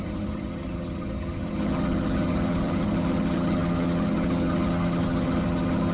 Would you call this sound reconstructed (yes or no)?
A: yes